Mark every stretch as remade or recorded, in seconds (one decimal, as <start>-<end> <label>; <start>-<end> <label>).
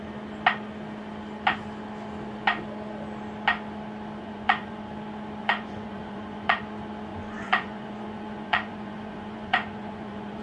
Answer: 0.0-4.2 recorded; 4.2-4.9 remade; 4.9-5.4 recorded; 5.4-6.6 remade; 6.6-7.1 recorded; 7.1-10.4 remade